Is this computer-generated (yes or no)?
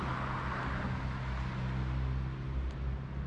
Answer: no